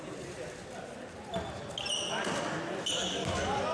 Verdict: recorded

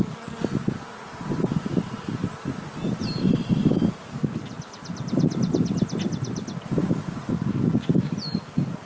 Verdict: recorded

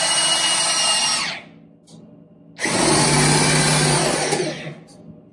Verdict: recorded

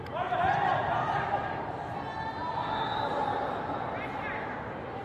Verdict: recorded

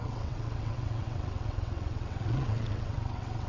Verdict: remade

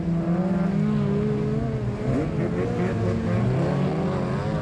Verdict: recorded